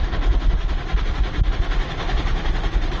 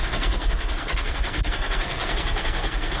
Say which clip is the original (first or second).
first